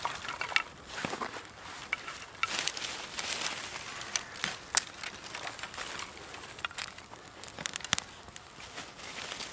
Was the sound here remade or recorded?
recorded